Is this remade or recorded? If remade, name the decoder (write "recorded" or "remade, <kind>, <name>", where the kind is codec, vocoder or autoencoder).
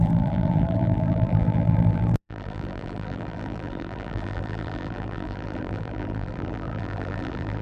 remade, vocoder, BigVGAN v2